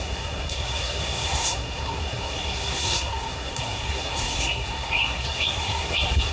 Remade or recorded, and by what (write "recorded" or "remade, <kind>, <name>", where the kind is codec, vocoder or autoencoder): remade, codec, SNAC